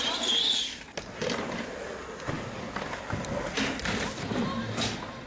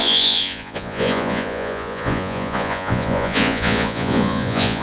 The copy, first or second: second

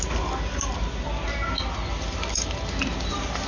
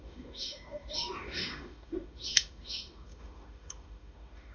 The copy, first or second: second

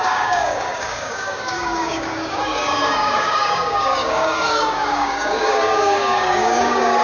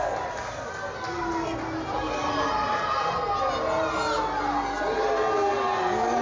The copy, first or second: first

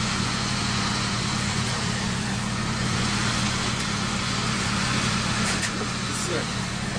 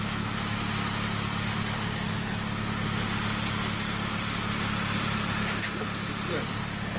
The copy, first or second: first